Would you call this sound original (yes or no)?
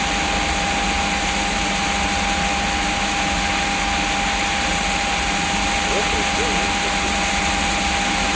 yes